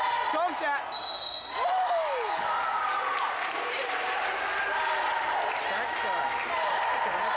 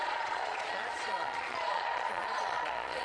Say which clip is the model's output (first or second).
second